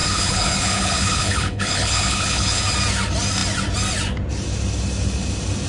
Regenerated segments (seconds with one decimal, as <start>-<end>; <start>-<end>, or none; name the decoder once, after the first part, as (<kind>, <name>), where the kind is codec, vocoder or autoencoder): 0.0-2.6 (codec, HILCodec)